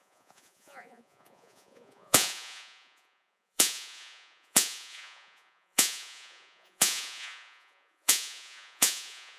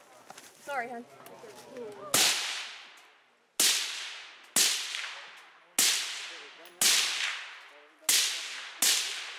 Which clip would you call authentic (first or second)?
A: second